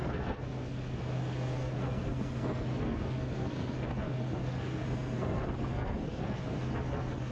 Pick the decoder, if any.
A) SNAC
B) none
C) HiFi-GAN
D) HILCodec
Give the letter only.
A